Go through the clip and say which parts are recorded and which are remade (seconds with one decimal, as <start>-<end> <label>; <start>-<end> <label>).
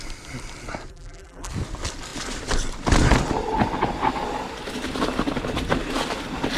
0.0-0.9 recorded; 0.9-1.5 remade; 1.5-6.6 recorded